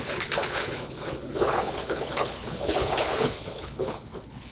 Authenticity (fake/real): fake